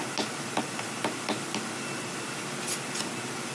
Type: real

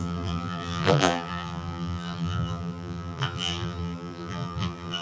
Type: fake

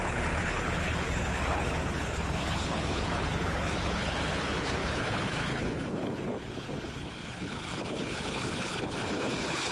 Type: fake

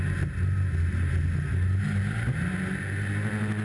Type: real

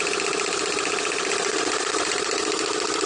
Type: fake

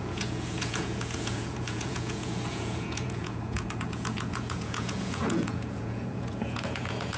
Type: fake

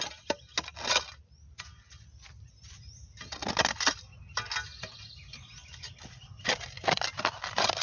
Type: real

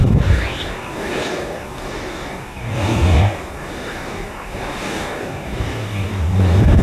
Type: fake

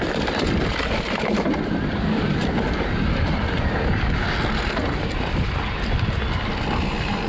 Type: real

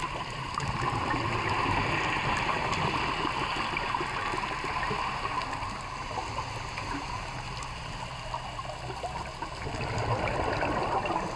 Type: real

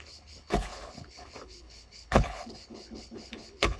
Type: fake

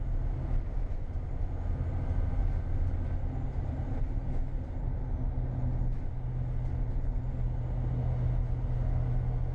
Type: real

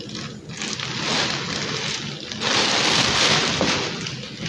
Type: real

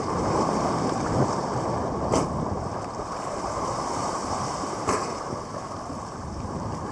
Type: fake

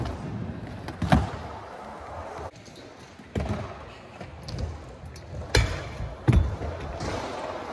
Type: real